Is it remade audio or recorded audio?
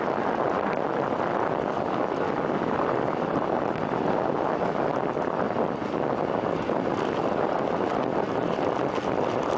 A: recorded